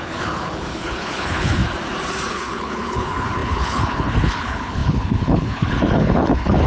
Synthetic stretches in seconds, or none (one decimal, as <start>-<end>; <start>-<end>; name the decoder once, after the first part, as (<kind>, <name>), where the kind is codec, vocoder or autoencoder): 0.0-1.6 (codec, HILCodec); 2.3-6.7